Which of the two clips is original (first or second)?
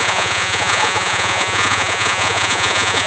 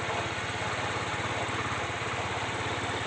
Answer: second